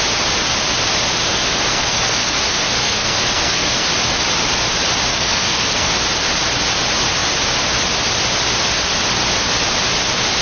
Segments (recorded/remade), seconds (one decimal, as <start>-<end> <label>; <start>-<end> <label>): 0.0-1.2 recorded; 1.2-3.9 remade; 3.9-5.1 recorded; 5.1-5.9 remade; 5.9-10.4 recorded